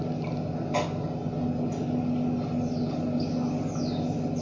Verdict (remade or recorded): recorded